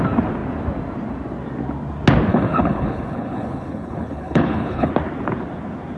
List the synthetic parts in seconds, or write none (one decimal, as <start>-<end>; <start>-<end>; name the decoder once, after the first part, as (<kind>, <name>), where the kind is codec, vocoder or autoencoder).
2.3-4.9 (codec, HILCodec)